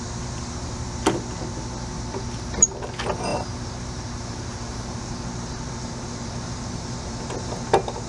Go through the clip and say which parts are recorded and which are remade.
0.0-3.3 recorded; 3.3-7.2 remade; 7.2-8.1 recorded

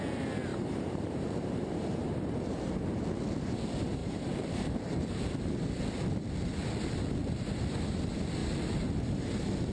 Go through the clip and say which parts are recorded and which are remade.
0.0-0.5 recorded; 0.5-3.0 remade; 3.0-4.0 recorded; 4.0-5.8 remade; 5.8-8.4 recorded; 8.4-9.7 remade

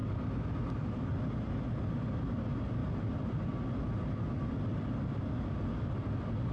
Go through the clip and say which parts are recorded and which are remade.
0.0-6.5 recorded